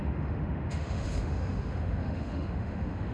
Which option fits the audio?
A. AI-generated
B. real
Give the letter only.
A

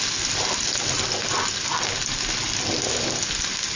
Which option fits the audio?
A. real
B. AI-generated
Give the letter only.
A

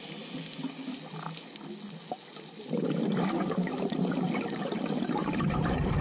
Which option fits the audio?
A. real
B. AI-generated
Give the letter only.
A